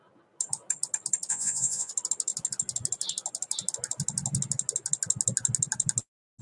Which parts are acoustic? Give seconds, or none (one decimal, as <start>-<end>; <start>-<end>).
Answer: 0.0-1.3; 1.9-6.4